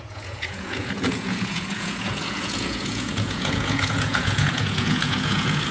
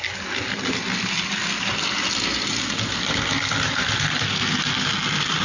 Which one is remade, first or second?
first